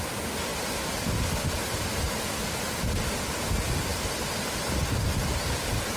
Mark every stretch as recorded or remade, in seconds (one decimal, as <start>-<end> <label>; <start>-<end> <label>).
0.0-6.0 recorded

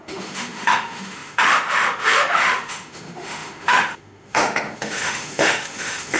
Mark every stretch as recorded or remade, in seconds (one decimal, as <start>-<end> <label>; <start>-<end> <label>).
0.0-6.2 remade

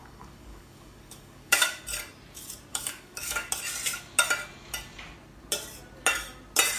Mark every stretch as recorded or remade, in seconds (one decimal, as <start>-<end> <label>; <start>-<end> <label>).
0.0-1.8 remade; 1.8-2.7 recorded; 2.7-3.5 remade; 3.5-6.8 recorded

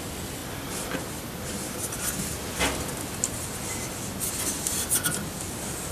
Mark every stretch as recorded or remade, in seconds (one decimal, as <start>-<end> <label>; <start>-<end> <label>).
0.0-5.9 recorded

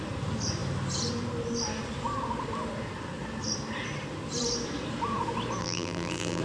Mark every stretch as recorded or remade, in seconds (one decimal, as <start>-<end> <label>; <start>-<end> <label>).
0.0-5.6 recorded; 5.6-6.4 remade